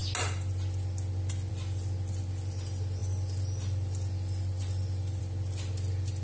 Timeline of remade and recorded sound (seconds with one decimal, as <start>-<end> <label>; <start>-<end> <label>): 0.0-3.0 recorded; 3.0-5.2 remade; 5.2-6.2 recorded